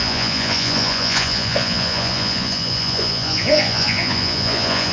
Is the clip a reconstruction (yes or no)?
yes